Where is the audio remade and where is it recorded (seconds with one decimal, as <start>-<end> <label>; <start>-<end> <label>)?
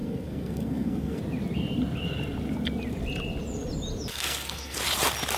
0.0-1.2 remade; 1.2-4.1 recorded; 4.1-4.8 remade; 4.8-5.4 recorded